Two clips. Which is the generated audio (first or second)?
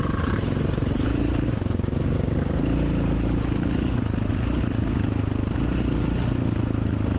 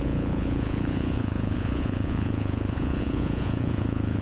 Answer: second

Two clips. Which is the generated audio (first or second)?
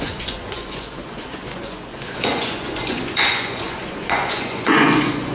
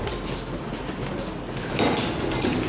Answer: first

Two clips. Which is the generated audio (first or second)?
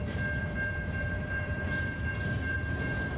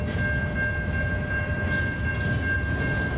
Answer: first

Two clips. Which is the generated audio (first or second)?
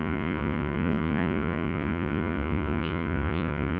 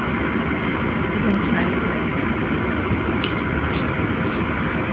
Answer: first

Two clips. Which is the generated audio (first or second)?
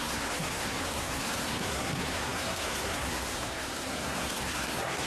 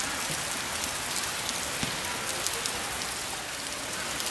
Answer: first